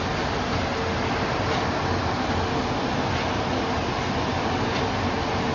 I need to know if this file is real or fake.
real